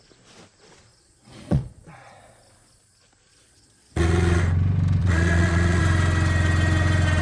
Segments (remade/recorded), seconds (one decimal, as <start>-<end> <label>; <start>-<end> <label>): 0.0-0.9 recorded; 0.9-2.2 remade; 2.2-3.3 recorded; 3.3-4.4 remade; 4.4-5.0 recorded; 5.0-5.8 remade; 5.8-7.2 recorded